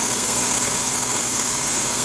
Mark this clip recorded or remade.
remade